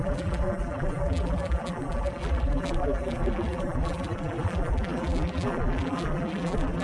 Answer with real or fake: fake